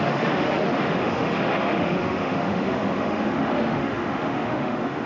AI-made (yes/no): yes